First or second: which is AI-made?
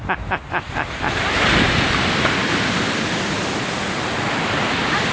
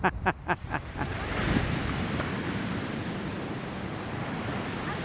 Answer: second